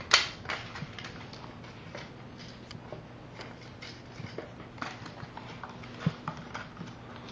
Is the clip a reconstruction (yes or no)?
no